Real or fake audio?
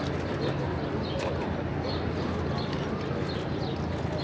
real